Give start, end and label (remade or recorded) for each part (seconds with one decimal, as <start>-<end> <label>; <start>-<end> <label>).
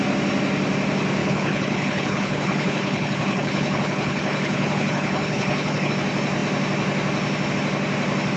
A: 0.0-1.2 recorded; 1.2-5.9 remade; 5.9-8.4 recorded